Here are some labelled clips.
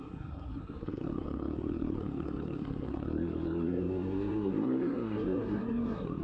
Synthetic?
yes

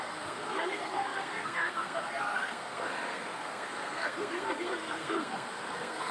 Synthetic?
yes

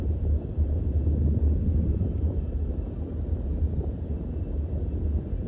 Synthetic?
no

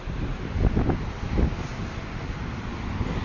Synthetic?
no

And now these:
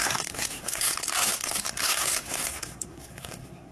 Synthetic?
yes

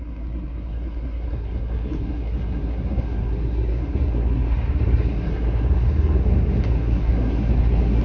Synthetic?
yes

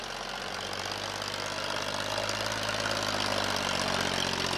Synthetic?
no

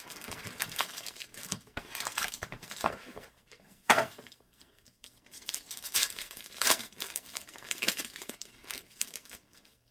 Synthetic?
yes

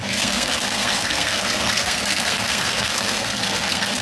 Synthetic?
yes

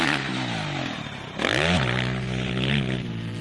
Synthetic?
no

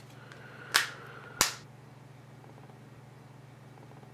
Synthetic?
no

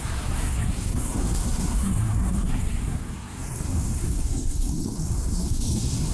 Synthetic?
yes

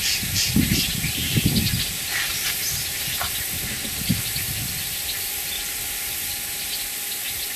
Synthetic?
no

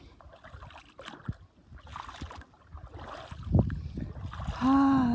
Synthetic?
no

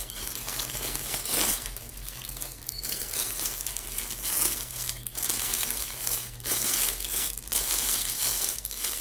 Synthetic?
yes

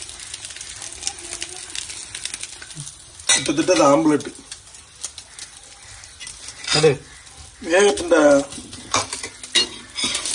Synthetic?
no